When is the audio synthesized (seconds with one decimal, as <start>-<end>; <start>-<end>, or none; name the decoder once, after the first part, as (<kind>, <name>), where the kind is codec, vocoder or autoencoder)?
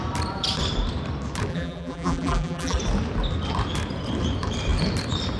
1.5-2.8 (vocoder, BigVGAN v2)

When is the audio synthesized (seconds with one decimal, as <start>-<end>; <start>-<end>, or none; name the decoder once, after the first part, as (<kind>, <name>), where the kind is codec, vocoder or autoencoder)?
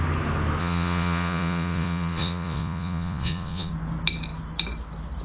0.6-3.7 (vocoder, Vocos)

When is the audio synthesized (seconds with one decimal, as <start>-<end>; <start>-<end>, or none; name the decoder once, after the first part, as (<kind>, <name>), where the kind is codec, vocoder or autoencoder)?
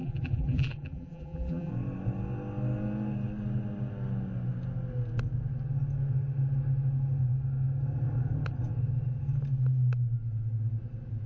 0.0-1.7 (vocoder, BigVGAN v2)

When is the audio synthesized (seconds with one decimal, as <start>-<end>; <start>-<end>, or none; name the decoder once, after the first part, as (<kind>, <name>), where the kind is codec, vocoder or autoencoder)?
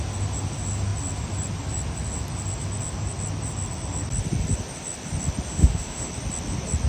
5.5-6.1 (autoencoder, DAC-VAE)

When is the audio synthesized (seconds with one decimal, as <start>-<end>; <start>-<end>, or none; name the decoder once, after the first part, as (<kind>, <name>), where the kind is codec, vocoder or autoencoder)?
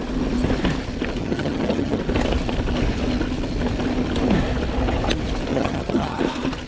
1.2-2.0 (vocoder, HiFi-GAN); 5.5-6.2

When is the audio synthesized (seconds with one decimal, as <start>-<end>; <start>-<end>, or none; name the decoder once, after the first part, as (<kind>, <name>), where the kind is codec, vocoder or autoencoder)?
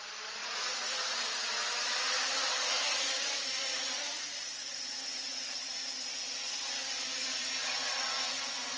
0.4-1.2 (vocoder, Vocos); 3.7-8.8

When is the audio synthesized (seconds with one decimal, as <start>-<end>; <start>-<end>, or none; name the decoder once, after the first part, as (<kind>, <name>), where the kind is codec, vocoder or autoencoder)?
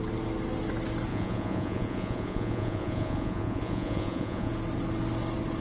1.1-4.5 (vocoder, Vocos)